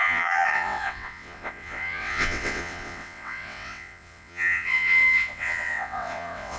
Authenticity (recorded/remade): remade